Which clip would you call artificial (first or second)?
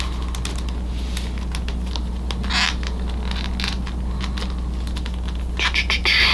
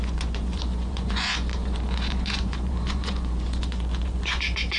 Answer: second